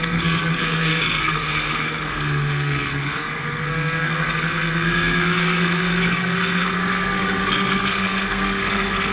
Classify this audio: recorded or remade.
remade